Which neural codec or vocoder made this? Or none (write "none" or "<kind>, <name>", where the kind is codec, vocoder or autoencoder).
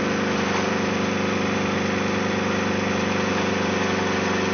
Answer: none